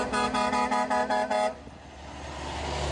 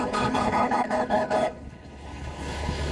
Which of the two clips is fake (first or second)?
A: second